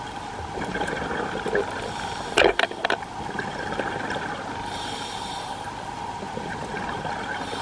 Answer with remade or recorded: recorded